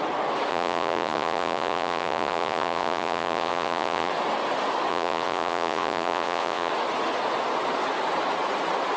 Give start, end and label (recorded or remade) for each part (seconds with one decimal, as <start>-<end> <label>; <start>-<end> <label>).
0.0-0.5 recorded; 0.5-4.1 remade; 4.1-4.9 recorded; 4.9-6.7 remade; 6.7-9.0 recorded